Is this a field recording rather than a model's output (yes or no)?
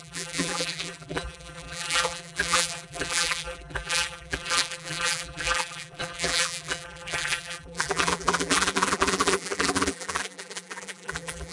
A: no